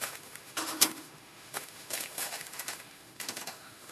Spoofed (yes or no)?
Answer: yes